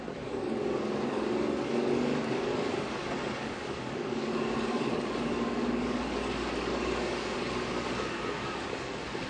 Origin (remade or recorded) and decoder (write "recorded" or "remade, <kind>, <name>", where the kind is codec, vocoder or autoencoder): remade, codec, DAC